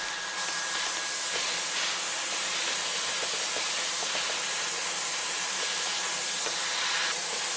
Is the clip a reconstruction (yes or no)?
no